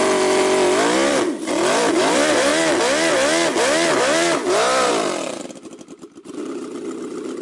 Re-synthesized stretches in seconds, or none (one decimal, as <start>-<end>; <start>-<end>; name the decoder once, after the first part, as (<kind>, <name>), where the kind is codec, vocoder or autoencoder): 0.0-2.5 (vocoder, BigVGAN v2); 4.9-7.4